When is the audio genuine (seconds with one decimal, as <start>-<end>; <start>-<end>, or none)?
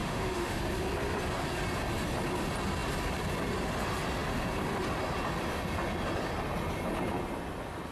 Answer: 0.6-7.9